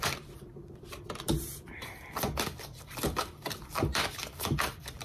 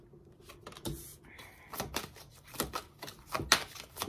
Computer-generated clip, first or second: first